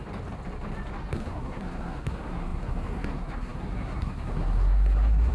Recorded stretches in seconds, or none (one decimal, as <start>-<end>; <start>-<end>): 0.0-1.1